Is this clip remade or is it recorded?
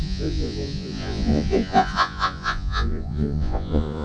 remade